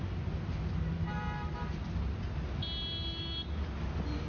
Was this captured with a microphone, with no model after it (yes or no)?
yes